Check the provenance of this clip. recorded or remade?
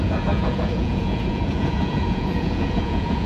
remade